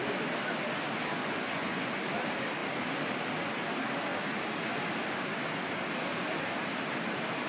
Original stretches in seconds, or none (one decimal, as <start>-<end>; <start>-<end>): 0.0-1.2; 1.9-7.5